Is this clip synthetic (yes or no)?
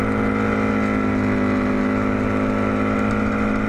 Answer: no